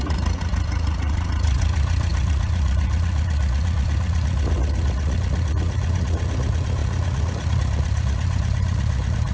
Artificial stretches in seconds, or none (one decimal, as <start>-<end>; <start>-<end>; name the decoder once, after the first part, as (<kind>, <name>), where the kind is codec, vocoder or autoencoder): 0.0-9.3 (vocoder, Vocos)